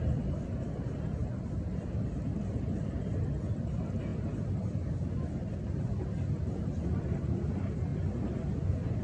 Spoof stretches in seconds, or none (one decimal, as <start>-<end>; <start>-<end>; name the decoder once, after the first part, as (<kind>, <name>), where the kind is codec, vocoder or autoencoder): 0.0-4.1 (vocoder, BigVGAN v2); 6.5-7.9